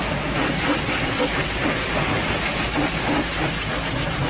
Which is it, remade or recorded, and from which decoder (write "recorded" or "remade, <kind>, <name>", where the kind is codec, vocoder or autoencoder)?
recorded